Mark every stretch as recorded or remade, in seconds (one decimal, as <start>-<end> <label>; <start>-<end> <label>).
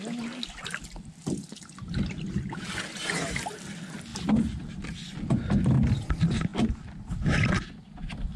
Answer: 0.0-8.4 recorded